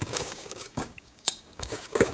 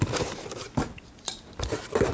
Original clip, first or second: second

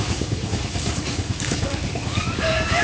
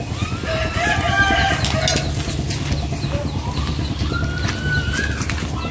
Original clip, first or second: second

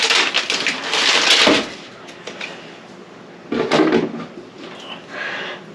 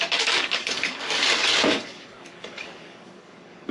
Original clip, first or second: first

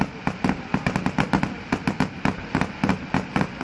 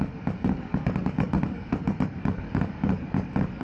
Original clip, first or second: first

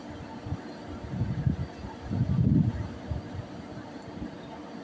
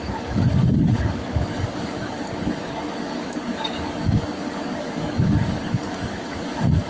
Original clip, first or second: first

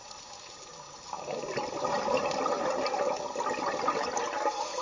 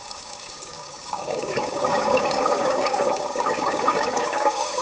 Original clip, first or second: first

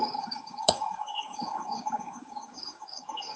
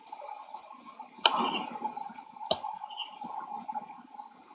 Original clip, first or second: second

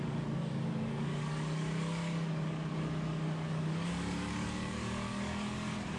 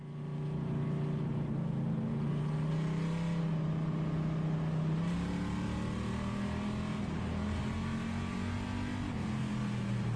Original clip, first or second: second